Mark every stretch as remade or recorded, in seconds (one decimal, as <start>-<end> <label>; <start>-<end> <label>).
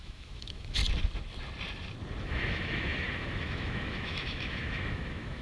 0.0-0.8 remade; 0.8-2.2 recorded; 2.2-5.4 remade